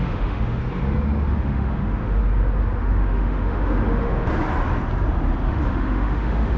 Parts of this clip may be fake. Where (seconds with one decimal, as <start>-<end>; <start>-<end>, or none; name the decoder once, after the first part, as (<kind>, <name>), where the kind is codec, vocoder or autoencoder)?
0.0-0.6 (autoencoder, DAC-VAE); 1.3-2.2; 2.8-4.3; 5.5-6.6